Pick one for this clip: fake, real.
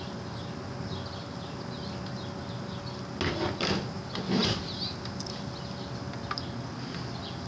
real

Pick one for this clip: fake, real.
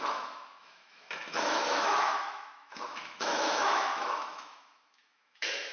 fake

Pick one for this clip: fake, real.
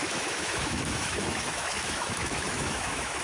fake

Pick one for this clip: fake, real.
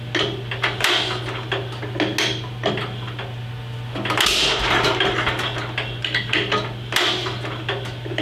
real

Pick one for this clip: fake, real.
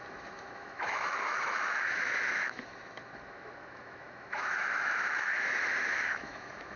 fake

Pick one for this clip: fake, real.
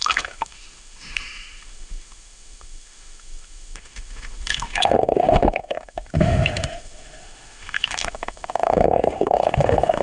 fake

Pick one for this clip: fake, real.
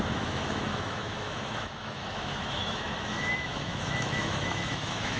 fake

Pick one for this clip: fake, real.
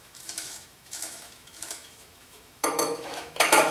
fake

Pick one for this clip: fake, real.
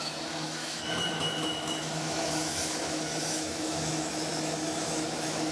fake